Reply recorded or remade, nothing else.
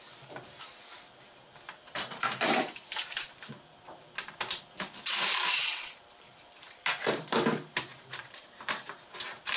remade